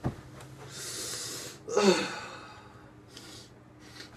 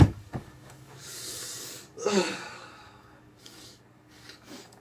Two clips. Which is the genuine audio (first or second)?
first